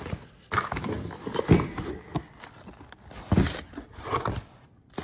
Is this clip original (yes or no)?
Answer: yes